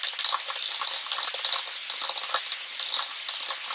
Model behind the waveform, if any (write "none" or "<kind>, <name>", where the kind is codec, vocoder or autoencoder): none